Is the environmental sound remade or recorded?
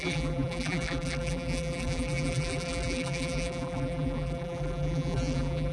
remade